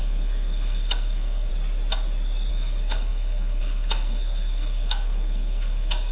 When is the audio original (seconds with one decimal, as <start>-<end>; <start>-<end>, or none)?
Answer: 1.5-2.5